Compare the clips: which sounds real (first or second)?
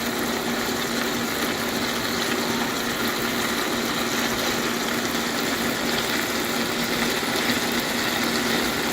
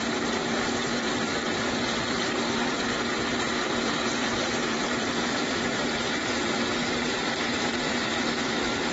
first